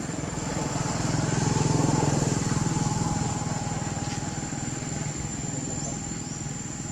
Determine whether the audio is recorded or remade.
recorded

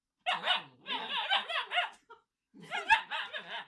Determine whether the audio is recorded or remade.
recorded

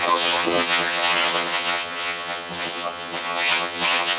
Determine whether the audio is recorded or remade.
remade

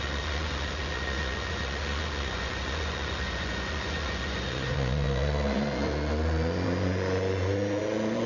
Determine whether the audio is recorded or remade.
remade